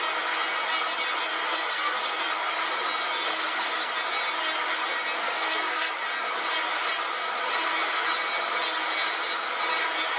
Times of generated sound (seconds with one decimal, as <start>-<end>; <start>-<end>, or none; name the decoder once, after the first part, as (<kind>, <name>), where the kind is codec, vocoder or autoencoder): 1.5-2.2 (codec, SNAC); 3.3-3.9; 5.2-5.9